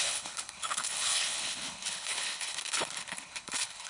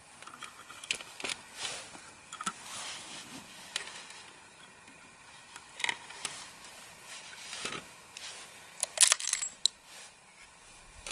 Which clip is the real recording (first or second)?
second